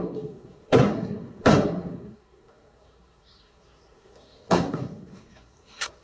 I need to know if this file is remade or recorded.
remade